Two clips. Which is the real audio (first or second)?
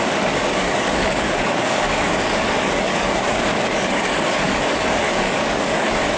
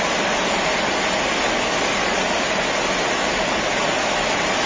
second